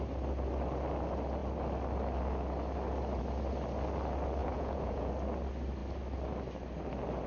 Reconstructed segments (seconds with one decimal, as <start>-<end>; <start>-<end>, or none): 4.4-5.1

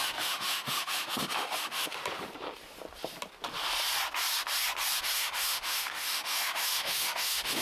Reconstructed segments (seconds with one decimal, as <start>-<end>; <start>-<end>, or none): 0.0-2.0; 5.0-7.6

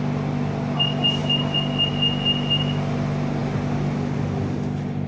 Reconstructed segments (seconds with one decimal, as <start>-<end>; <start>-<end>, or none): none

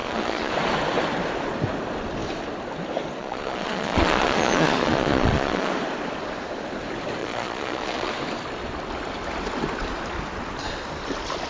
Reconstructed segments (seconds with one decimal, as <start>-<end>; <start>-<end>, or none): 0.0-0.5; 3.2-5.7; 7.2-8.1